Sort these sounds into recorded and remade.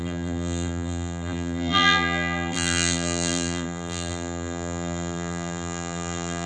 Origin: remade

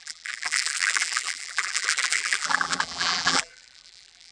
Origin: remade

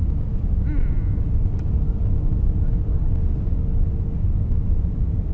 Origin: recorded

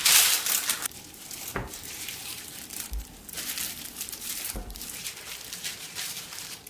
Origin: remade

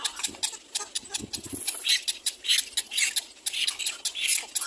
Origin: recorded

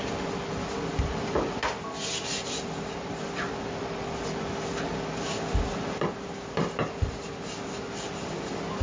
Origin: recorded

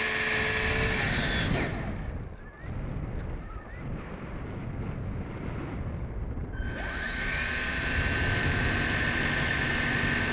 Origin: recorded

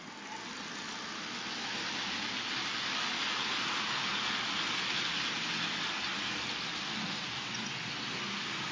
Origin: recorded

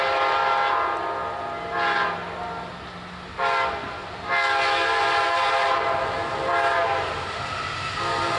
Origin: recorded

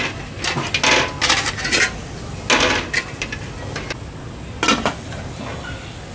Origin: recorded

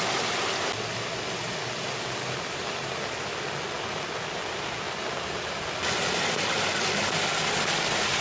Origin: recorded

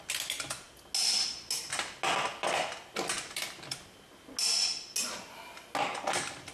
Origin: recorded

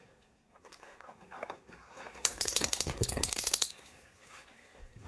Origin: remade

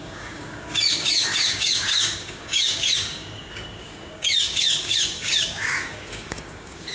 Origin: remade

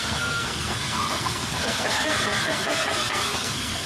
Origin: remade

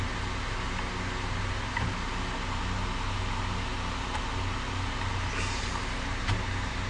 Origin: recorded